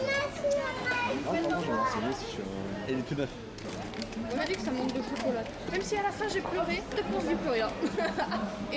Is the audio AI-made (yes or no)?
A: no